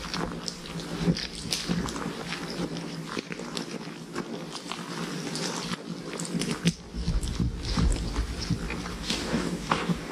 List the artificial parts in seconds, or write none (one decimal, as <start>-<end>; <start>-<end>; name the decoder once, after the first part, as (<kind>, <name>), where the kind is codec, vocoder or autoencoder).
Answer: 8.9-10.1 (codec, DAC)